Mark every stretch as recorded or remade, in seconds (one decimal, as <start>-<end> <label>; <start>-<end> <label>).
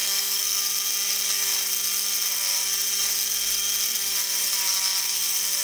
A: 0.0-0.6 remade; 0.6-5.6 recorded